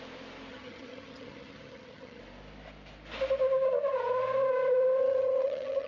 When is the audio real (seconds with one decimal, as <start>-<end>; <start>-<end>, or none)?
0.0-0.5; 2.2-5.0